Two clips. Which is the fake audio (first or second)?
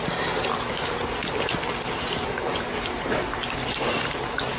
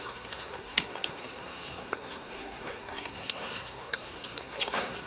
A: second